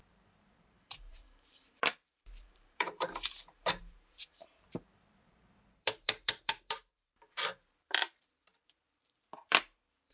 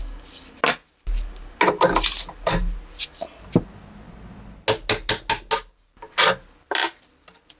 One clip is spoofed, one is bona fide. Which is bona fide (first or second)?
second